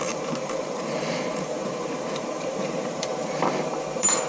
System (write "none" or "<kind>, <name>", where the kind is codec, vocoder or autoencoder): vocoder, BigVGAN v2